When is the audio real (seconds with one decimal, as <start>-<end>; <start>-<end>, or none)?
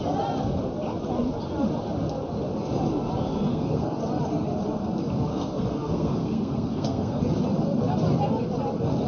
0.0-3.5; 4.0-5.3; 7.2-9.1